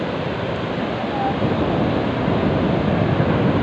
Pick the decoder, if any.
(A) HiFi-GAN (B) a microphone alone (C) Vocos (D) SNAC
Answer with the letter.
B